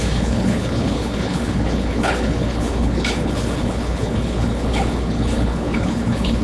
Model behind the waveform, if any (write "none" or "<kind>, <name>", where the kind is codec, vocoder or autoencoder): codec, HILCodec